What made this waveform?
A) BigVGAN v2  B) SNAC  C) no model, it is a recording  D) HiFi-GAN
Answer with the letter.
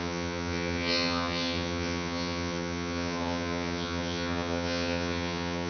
D